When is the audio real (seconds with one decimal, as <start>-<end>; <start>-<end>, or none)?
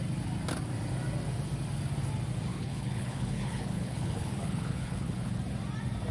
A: 0.0-2.5; 5.4-6.1